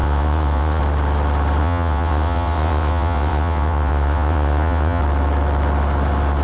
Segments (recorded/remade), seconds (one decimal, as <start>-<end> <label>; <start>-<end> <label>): 0.0-0.8 remade; 0.8-1.6 recorded; 1.6-5.0 remade; 5.0-6.4 recorded